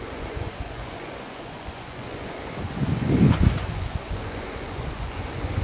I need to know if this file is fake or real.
fake